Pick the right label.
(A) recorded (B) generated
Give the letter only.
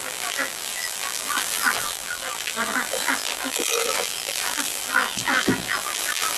B